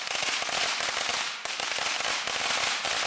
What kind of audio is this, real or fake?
real